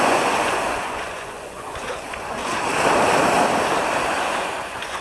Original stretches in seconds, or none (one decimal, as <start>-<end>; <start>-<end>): 2.4-4.1